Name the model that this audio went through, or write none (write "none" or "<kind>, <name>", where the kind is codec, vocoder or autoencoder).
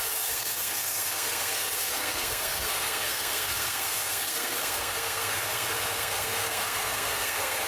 codec, SNAC